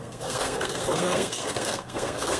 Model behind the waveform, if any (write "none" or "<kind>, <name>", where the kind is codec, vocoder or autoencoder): codec, SNAC